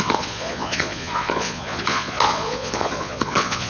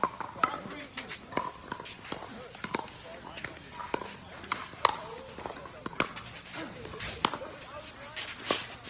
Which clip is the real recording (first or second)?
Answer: second